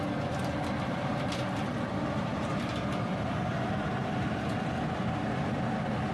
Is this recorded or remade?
recorded